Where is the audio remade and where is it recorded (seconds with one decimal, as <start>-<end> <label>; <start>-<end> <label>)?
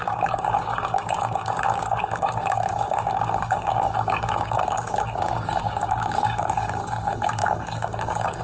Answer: 0.0-8.4 remade